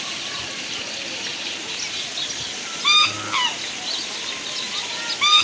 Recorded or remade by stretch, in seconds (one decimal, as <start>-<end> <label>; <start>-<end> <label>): 0.0-5.4 recorded